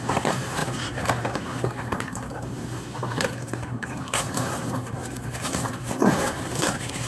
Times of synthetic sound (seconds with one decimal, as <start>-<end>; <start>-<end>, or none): 0.0-7.1